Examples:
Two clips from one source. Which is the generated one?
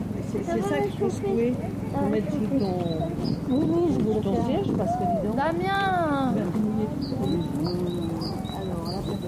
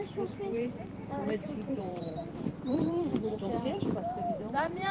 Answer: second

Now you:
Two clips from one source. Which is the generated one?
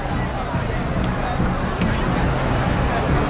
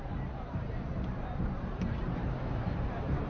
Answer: second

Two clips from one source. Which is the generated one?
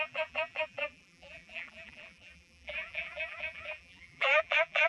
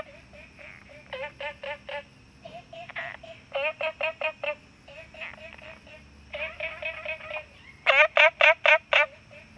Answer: first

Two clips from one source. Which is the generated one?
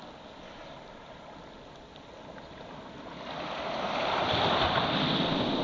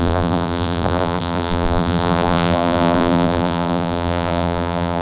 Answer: second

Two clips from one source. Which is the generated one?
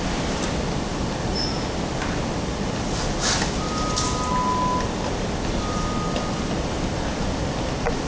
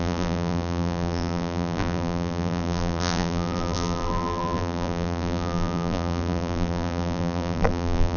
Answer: second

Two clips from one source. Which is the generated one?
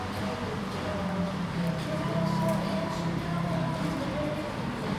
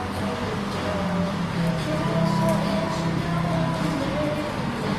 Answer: first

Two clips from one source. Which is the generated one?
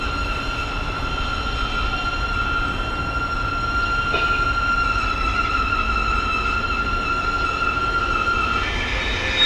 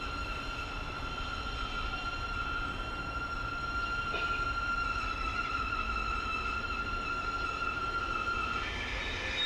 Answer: second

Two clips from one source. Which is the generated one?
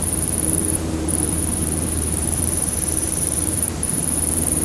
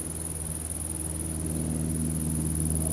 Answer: first